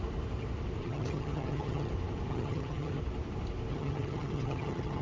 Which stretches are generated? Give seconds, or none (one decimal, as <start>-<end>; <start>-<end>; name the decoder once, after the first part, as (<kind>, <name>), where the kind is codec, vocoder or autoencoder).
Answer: 0.8-1.9 (vocoder, HiFi-GAN); 2.3-3.0; 3.7-5.0